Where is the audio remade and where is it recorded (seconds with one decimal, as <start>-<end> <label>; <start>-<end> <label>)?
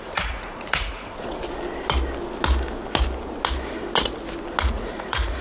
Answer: 0.0-1.4 remade; 1.4-4.6 recorded; 4.6-5.4 remade